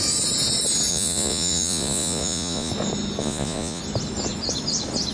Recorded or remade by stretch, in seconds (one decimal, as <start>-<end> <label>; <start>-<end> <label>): 0.0-0.9 recorded; 0.9-2.7 remade; 2.7-3.2 recorded; 3.2-3.8 remade; 3.8-5.1 recorded